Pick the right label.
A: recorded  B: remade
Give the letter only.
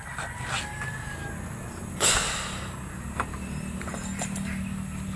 A